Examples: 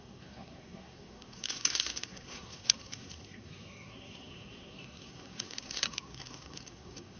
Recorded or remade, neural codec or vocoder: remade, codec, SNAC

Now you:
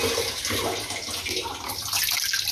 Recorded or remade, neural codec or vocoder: recorded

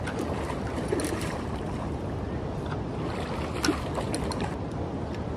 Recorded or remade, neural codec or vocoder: recorded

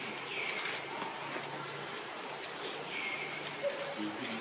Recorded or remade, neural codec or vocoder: recorded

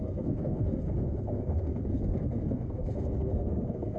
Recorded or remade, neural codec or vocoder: remade, codec, SNAC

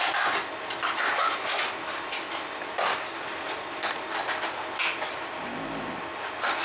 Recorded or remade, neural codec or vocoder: recorded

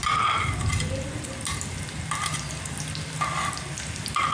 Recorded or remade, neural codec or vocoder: recorded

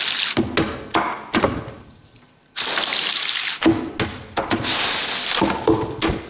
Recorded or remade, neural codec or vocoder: recorded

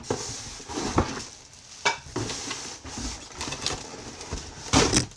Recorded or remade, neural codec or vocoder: recorded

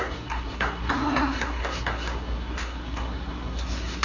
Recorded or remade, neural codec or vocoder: remade, codec, SNAC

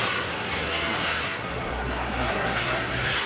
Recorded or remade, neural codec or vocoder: remade, codec, SNAC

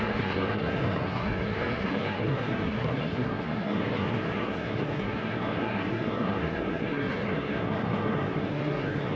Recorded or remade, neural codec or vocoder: remade, codec, SNAC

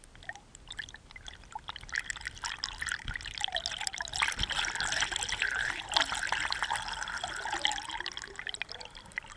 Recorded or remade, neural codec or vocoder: recorded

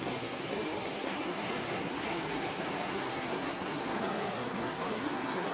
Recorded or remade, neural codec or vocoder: remade, codec, SNAC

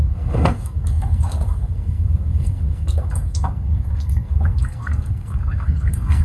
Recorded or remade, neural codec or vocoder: remade, codec, SNAC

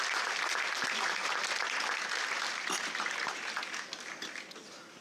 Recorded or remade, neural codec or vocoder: recorded